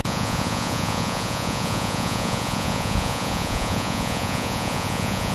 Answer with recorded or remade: remade